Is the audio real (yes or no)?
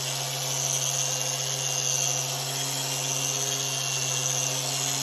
yes